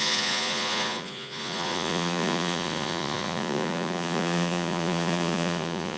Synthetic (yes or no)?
yes